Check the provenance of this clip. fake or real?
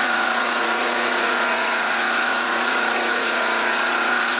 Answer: fake